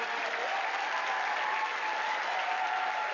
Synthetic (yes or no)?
no